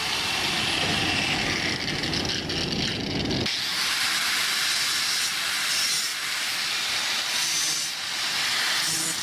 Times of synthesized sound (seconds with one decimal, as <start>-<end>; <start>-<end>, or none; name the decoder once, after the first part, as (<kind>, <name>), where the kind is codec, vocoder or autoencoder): 6.1-6.9 (vocoder, BigVGAN v2)